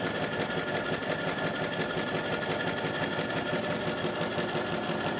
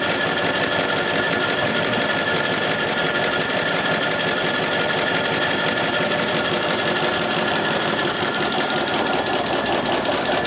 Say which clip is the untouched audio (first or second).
first